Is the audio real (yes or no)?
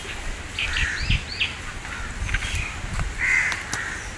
yes